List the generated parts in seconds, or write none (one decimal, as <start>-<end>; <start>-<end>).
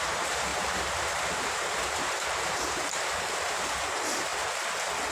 0.0-4.3